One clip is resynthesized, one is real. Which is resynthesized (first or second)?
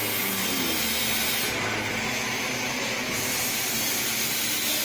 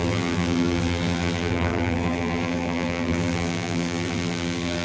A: second